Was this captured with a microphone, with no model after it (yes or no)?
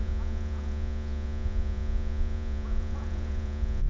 no